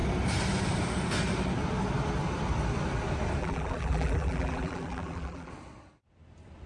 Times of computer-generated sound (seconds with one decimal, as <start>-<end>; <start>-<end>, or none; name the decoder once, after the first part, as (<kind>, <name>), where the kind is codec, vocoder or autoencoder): 3.4-5.5 (vocoder, BigVGAN v2)